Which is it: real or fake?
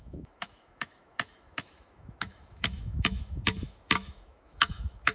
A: fake